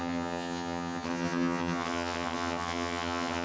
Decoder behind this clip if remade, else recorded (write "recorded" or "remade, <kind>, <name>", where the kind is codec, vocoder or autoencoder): remade, vocoder, HiFi-GAN